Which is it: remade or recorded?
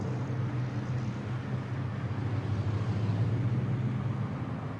recorded